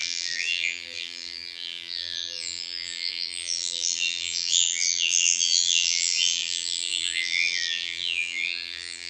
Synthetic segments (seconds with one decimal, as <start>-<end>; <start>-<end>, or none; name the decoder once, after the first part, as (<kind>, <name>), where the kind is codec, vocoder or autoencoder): 0.0-9.1 (vocoder, BigVGAN v2)